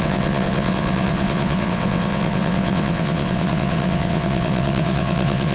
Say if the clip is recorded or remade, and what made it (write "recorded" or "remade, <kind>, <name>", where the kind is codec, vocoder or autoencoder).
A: remade, vocoder, WaveNeXt